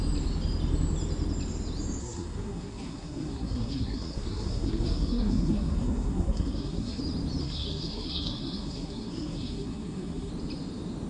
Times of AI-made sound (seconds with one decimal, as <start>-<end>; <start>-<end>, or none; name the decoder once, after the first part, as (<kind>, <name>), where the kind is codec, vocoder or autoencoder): 2.0-7.0 (codec, SNAC); 7.4-10.3